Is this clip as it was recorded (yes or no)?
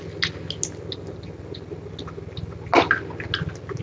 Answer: yes